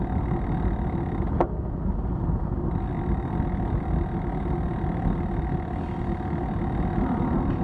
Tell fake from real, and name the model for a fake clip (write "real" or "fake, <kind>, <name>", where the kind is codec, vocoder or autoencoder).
real